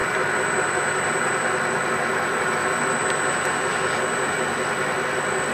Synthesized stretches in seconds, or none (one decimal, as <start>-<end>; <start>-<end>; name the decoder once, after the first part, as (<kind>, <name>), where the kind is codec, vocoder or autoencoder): 0.0-3.3 (vocoder, BigVGAN v2)